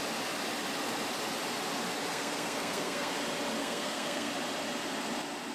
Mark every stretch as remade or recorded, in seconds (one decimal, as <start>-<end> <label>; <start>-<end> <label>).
0.0-2.1 recorded; 2.1-3.1 remade; 3.1-3.6 recorded; 3.6-4.3 remade; 4.3-5.5 recorded

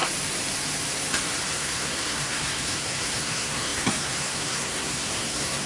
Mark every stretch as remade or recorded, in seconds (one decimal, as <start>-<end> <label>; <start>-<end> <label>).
0.0-1.5 recorded; 1.5-5.7 remade

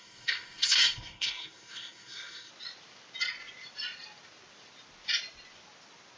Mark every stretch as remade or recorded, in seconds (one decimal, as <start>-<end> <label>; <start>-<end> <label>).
0.0-2.5 remade; 2.5-6.2 recorded